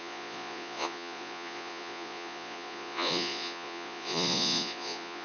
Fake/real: fake